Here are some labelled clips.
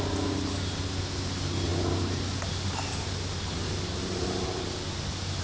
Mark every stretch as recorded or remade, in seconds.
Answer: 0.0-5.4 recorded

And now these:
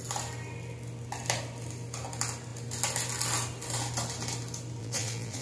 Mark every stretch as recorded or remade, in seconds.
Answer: 0.0-4.8 recorded; 4.8-5.4 remade

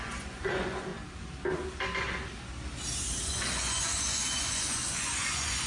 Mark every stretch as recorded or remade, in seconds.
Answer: 0.0-0.9 remade; 0.9-3.2 recorded; 3.2-5.7 remade

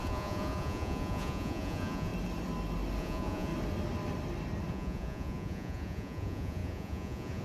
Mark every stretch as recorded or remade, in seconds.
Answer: 0.0-2.1 remade; 2.1-3.0 recorded; 3.0-3.5 remade; 3.5-4.7 recorded; 4.7-7.4 remade

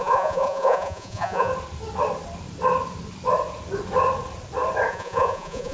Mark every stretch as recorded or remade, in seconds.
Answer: 0.0-1.5 remade; 1.5-4.9 recorded; 4.9-5.7 remade